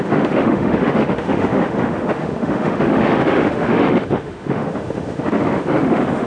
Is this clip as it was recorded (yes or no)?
no